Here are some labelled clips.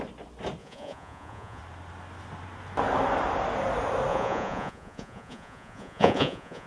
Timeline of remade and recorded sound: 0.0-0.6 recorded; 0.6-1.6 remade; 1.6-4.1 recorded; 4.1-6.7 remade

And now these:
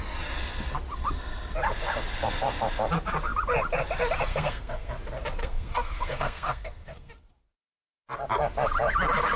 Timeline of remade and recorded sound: 0.0-4.3 recorded; 4.3-4.9 remade; 4.9-5.4 recorded; 5.4-7.1 remade; 7.1-9.4 recorded